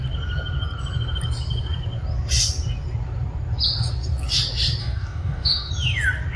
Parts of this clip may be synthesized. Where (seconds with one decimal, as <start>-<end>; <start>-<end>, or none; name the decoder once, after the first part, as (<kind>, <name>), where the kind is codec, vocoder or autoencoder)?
4.8-5.7 (codec, DAC)